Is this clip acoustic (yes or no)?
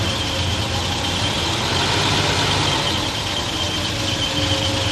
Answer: yes